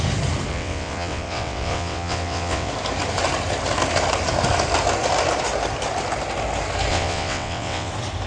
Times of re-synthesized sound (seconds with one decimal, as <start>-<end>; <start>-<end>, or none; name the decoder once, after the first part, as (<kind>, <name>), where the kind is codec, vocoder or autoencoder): 0.5-2.7 (vocoder, WaveNeXt); 6.9-7.9